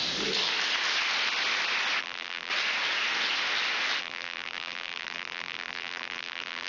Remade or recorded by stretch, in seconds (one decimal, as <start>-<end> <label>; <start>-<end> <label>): 0.0-2.0 recorded; 2.0-2.5 remade; 2.5-4.0 recorded; 4.0-6.7 remade